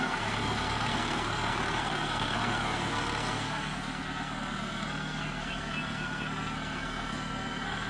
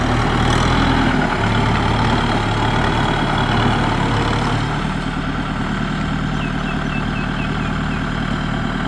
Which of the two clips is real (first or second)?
second